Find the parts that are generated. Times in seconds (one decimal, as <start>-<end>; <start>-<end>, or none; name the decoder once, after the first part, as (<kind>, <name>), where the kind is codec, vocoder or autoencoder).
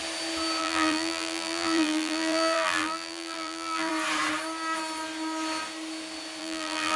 0.6-3.9 (vocoder, BigVGAN v2); 6.4-7.0